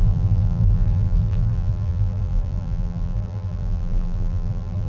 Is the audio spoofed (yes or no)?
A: yes